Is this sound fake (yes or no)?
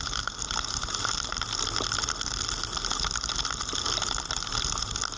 no